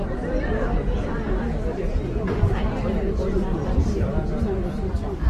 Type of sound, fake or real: real